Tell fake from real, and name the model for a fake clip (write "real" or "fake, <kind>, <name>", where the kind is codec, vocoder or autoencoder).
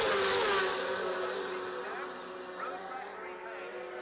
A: real